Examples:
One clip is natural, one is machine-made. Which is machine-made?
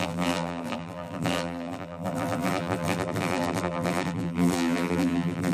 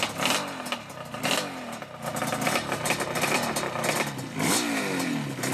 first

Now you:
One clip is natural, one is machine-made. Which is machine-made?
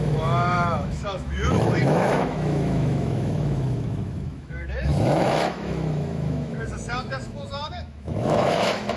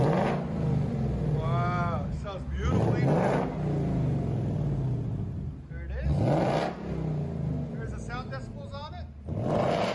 first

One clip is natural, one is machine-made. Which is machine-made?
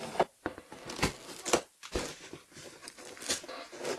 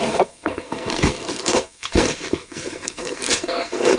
second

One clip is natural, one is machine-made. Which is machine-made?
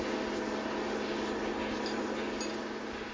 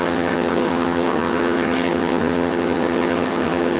second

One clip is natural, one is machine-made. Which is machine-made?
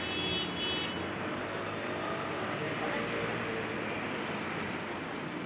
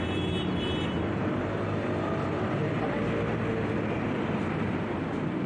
second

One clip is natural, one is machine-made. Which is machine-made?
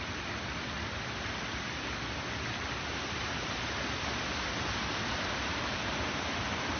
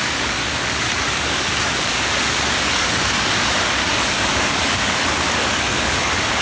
second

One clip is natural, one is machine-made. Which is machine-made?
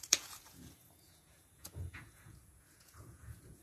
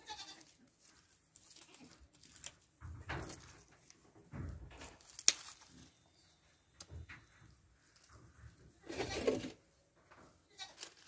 first